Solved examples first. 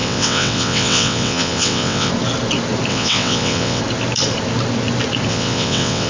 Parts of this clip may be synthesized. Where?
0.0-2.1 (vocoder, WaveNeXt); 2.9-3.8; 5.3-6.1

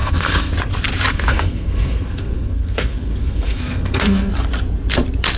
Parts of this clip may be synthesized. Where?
0.0-0.5 (codec, SNAC); 1.1-4.3

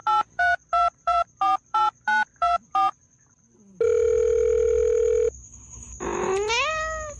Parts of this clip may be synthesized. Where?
0.0-3.4 (vocoder, BigVGAN v2)

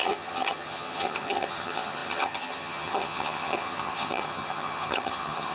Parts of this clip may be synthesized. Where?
0.0-5.5 (vocoder, HiFi-GAN)

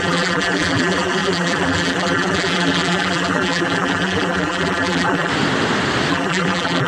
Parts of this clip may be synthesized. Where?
0.0-5.3 (vocoder, BigVGAN v2); 6.1-6.9